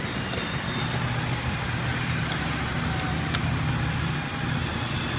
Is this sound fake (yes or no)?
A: no